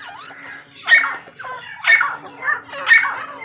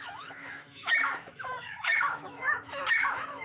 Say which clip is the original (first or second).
first